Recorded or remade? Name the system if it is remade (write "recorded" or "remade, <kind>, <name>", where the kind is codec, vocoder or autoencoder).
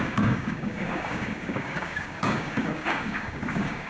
remade, codec, DAC